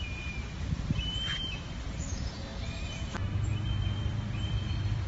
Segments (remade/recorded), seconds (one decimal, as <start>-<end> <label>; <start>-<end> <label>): 0.0-2.5 remade; 2.5-3.0 recorded; 3.0-5.1 remade

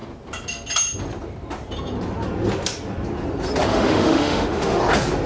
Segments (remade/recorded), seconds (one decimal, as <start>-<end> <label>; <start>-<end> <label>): 0.0-3.7 recorded; 3.7-4.8 remade; 4.8-5.3 recorded